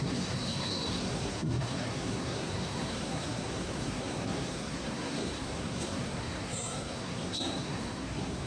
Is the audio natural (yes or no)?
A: no